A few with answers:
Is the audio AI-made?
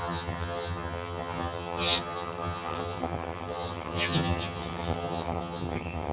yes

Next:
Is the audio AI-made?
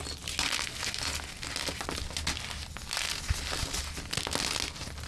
no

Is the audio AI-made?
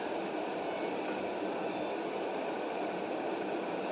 no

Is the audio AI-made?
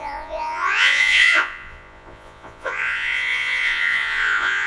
yes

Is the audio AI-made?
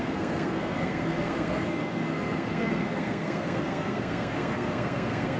yes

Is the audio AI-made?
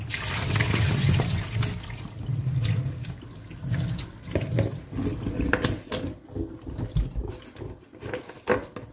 no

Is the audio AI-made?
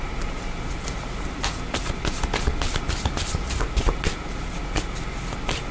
no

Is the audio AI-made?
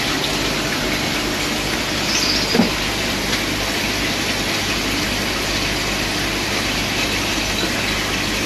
no